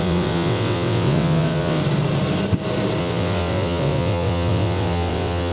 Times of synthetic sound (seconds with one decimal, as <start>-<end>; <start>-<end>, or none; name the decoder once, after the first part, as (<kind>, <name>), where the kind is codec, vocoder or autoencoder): 0.0-1.8 (vocoder, WaveNeXt); 3.0-5.5